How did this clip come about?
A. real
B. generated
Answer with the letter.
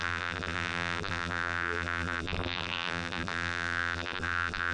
B